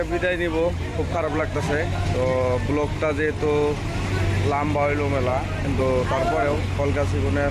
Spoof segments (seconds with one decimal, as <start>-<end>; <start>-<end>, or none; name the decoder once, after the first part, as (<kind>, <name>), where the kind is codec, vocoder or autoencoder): 0.9-1.6 (vocoder, BigVGAN v2); 5.3-5.8